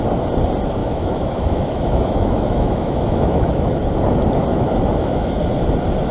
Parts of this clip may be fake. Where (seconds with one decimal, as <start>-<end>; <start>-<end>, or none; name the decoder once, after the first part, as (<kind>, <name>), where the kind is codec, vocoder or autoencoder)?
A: 0.8-3.8 (autoencoder, DAC-VAE); 4.5-5.4